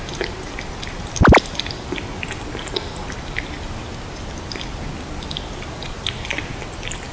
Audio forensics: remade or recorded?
recorded